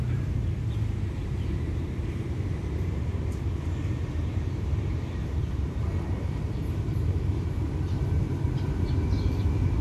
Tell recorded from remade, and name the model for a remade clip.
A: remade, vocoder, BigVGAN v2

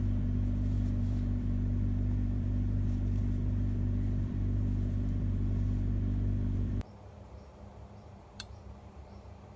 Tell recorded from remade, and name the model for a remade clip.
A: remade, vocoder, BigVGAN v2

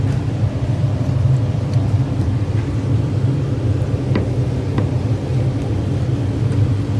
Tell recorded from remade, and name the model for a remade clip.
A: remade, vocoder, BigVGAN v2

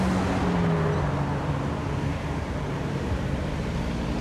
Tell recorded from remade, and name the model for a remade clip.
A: recorded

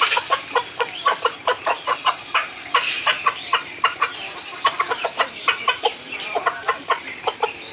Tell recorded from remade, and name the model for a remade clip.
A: remade, vocoder, BigVGAN v2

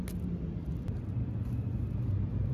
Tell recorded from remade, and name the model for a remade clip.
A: recorded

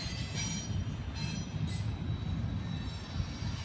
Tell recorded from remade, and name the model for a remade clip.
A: recorded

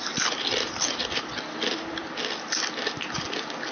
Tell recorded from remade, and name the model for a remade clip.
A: remade, vocoder, BigVGAN v2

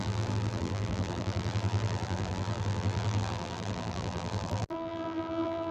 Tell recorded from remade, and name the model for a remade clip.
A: remade, vocoder, BigVGAN v2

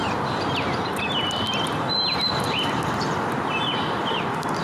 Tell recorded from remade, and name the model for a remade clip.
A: recorded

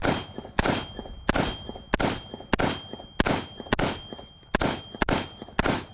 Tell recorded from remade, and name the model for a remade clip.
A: recorded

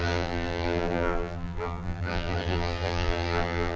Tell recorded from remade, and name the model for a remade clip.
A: remade, vocoder, BigVGAN v2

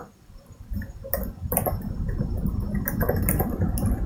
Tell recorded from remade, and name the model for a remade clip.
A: recorded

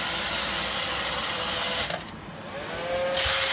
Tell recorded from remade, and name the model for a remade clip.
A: recorded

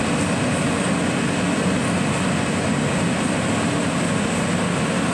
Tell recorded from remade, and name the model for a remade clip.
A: recorded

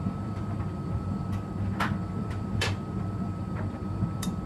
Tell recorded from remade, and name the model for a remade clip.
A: remade, vocoder, BigVGAN v2